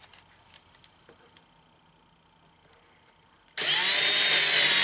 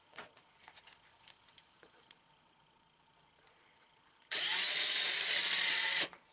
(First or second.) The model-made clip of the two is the second